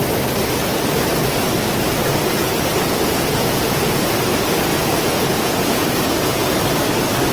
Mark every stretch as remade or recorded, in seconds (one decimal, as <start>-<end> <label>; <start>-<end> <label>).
0.0-2.0 recorded; 2.0-4.3 remade; 4.3-4.7 recorded; 4.7-6.4 remade; 6.4-7.3 recorded